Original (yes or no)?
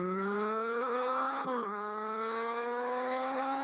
no